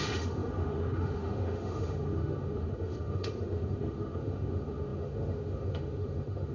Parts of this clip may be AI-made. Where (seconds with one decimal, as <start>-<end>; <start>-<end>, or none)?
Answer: 0.0-6.5

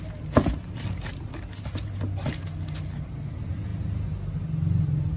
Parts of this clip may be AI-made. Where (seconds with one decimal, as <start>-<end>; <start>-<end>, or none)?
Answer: none

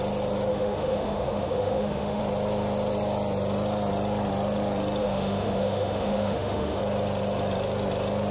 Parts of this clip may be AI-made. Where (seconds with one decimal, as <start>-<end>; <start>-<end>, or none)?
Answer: 0.5-2.2; 5.0-6.8

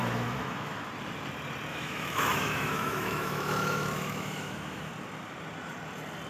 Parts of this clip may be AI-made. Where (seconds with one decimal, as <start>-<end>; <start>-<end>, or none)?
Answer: 0.0-0.9; 1.7-4.9

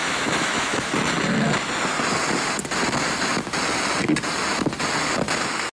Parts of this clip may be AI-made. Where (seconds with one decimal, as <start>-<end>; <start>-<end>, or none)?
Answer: 0.0-0.9

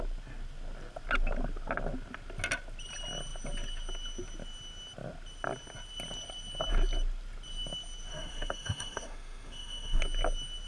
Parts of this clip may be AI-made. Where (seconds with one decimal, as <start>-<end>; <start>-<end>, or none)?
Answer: 8.1-10.0

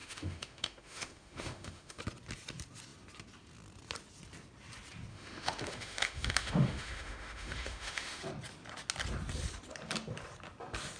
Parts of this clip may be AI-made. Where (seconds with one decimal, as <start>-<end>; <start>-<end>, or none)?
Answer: 0.0-2.0; 5.1-8.2